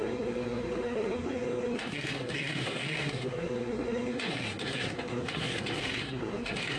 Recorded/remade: remade